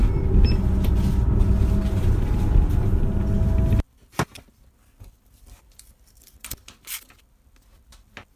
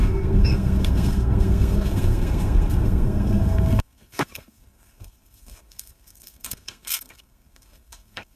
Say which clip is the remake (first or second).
second